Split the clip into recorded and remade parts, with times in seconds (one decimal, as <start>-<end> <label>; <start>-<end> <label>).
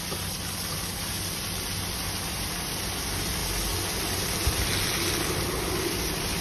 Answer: 0.0-6.4 recorded